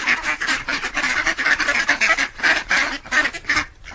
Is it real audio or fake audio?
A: fake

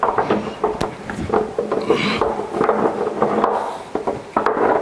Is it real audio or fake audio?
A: real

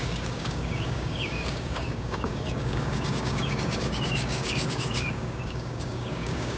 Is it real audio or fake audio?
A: fake